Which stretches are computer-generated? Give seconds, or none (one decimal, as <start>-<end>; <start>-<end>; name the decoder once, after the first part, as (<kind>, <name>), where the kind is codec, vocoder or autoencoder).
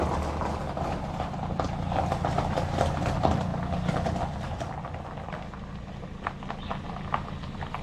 none